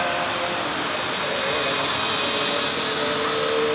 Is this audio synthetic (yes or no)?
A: no